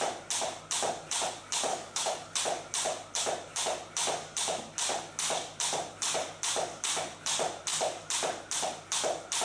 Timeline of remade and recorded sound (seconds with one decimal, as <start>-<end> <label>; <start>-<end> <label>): 0.0-1.7 recorded; 1.7-2.4 remade; 2.4-9.4 recorded